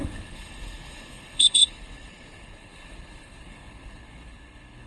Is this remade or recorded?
remade